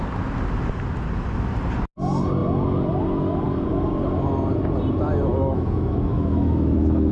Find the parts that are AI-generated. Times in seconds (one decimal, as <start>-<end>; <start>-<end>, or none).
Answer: 5.3-7.1